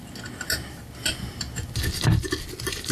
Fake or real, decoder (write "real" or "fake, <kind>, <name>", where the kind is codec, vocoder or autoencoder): real